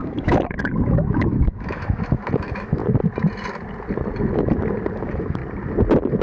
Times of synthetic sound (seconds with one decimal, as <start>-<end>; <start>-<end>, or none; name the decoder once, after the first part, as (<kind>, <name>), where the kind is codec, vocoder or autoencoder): 0.0-2.8 (autoencoder, DAC-VAE); 5.0-5.4